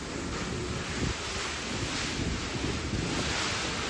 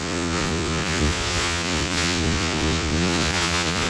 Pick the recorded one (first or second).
first